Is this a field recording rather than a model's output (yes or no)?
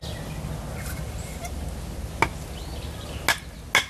yes